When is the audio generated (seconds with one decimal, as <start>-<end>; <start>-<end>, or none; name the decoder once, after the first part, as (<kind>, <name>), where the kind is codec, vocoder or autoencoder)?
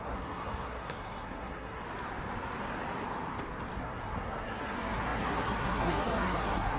0.0-1.8 (codec, SNAC); 3.8-6.8